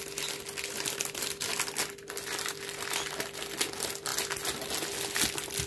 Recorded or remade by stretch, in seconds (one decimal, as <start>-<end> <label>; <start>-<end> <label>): 0.0-5.7 recorded